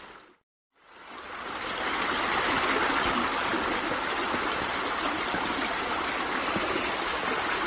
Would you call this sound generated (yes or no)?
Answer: no